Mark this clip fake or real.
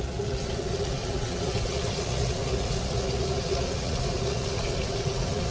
fake